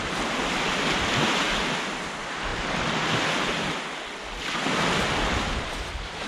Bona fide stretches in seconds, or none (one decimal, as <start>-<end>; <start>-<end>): 0.0-6.3